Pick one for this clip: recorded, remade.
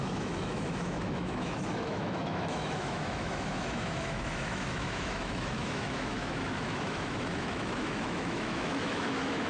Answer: remade